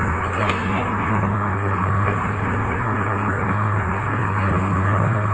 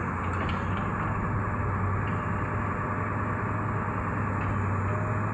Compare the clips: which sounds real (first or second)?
second